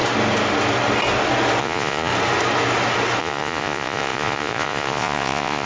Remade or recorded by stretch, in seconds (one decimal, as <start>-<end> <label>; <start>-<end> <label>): 0.0-1.6 recorded; 1.6-2.1 remade; 2.1-3.2 recorded; 3.2-5.7 remade